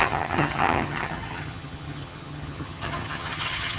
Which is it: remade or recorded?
remade